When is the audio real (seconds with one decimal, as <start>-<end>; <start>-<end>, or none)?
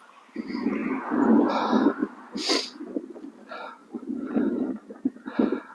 0.0-0.8; 1.4-2.0; 2.8-3.8; 4.3-5.7